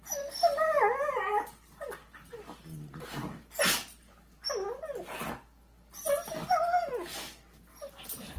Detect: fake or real real